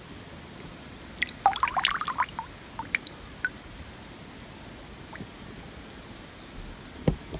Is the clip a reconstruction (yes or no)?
no